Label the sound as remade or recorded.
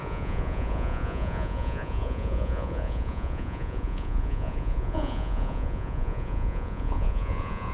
remade